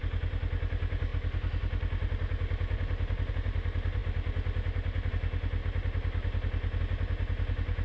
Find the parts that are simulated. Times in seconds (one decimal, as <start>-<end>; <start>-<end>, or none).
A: none